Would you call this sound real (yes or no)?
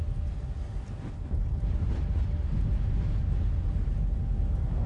yes